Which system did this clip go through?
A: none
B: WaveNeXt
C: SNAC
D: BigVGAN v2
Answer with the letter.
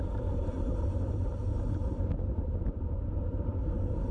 D